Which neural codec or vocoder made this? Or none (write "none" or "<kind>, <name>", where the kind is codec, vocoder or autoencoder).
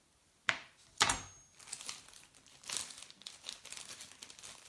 none